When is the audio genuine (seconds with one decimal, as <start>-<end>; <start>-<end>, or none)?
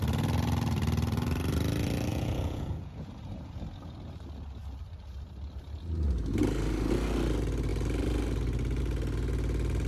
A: 0.0-2.1; 3.1-9.9